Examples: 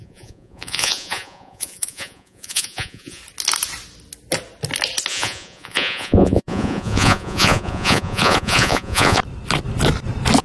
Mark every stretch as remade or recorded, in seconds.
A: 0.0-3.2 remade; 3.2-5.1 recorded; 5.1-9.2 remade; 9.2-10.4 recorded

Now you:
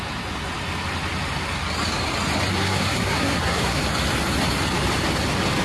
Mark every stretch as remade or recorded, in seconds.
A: 0.0-2.5 recorded; 2.5-3.8 remade; 3.8-5.6 recorded

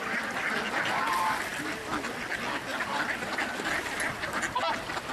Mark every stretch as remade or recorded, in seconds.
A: 0.0-5.1 recorded

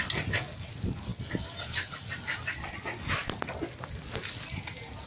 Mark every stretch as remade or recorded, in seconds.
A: 0.0-5.1 recorded